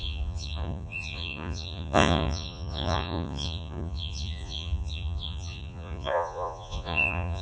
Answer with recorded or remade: remade